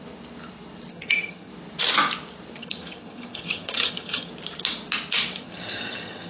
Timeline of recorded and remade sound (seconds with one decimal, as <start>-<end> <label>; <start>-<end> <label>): 0.0-0.9 recorded; 0.9-1.5 remade; 1.5-2.6 recorded; 2.6-4.3 remade; 4.3-5.4 recorded; 5.4-6.3 remade